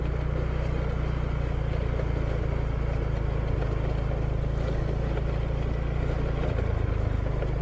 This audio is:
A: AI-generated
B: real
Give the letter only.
B